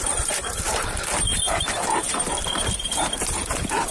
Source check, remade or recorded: remade